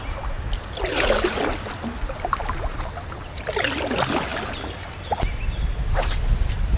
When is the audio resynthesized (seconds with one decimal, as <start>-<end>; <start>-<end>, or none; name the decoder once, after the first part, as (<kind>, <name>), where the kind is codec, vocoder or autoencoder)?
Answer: none